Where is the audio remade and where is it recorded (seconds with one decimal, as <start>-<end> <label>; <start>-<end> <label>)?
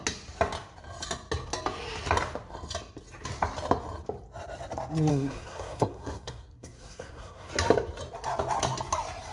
0.0-5.1 recorded; 5.1-7.5 remade; 7.5-9.3 recorded